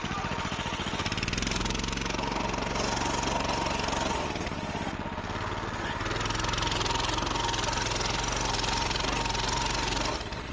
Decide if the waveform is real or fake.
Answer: real